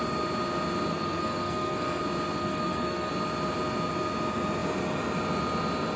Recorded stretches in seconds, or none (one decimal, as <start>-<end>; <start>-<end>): 0.0-0.9; 2.0-2.4; 3.1-6.0